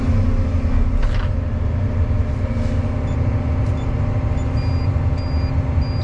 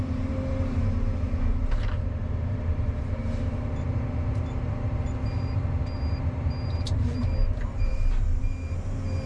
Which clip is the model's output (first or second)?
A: second